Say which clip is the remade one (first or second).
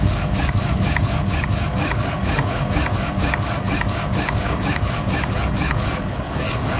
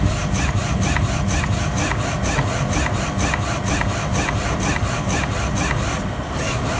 first